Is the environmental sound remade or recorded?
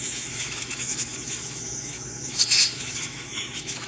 remade